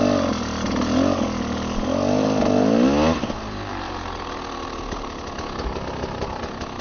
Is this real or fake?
real